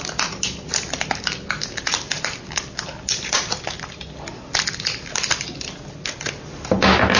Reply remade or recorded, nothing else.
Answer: recorded